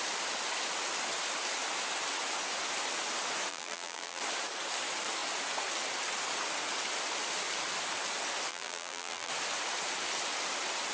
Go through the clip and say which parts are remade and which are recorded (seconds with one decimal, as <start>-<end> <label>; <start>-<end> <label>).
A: 0.0-3.5 recorded; 3.5-4.2 remade; 4.2-8.5 recorded; 8.5-9.3 remade; 9.3-10.9 recorded